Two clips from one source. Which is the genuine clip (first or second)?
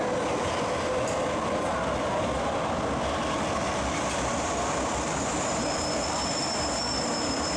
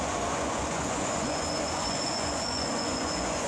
first